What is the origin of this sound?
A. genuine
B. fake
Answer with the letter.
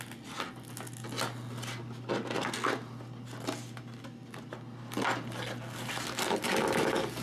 A